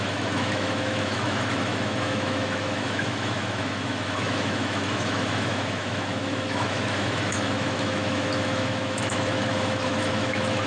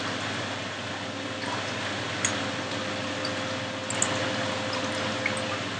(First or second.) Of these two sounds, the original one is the second